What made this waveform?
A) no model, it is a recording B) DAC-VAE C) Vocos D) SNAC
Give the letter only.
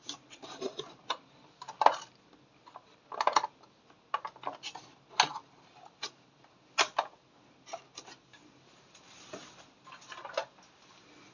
A